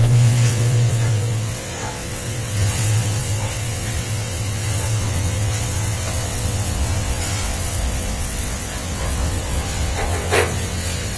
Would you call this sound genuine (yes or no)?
no